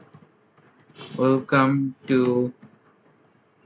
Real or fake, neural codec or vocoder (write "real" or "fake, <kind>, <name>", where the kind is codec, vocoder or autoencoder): real